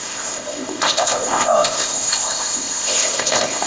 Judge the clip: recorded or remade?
remade